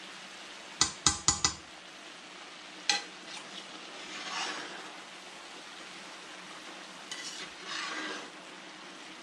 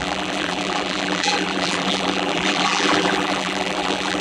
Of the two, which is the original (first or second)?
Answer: first